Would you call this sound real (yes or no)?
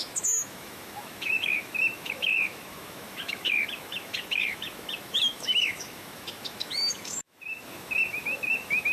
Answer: no